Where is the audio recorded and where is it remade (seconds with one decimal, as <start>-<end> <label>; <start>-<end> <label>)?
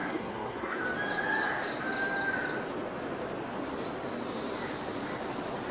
0.0-0.8 remade; 0.8-5.7 recorded